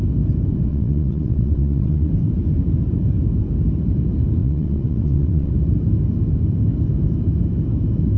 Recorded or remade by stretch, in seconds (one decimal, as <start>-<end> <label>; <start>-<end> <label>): 0.0-0.7 recorded; 0.7-2.1 remade; 2.1-4.4 recorded; 4.4-5.5 remade; 5.5-8.2 recorded